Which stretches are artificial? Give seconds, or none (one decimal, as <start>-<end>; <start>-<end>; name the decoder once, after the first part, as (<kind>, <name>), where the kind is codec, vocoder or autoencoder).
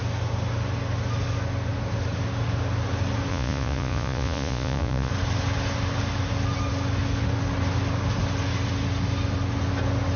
3.3-5.1 (vocoder, Vocos)